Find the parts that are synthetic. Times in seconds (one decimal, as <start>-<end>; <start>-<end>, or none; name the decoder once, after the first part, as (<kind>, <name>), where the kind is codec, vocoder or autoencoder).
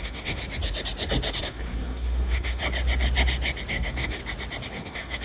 0.0-0.4 (codec, SNAC); 1.4-2.6; 3.7-4.2; 4.7-5.2